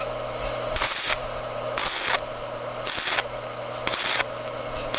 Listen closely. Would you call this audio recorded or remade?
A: recorded